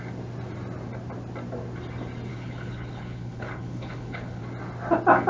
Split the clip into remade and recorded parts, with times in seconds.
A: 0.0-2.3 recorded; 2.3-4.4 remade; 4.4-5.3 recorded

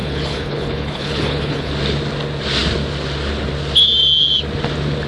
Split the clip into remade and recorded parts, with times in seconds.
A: 0.0-1.7 remade; 1.7-5.1 recorded

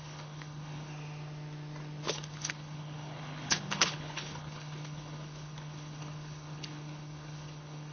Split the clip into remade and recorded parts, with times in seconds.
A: 0.0-0.9 remade; 0.9-2.0 recorded; 2.0-7.9 remade

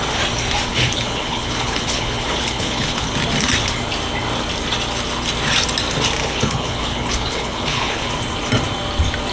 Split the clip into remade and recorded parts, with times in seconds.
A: 0.0-0.7 recorded; 0.7-3.1 remade; 3.1-6.2 recorded; 6.2-8.1 remade; 8.1-9.3 recorded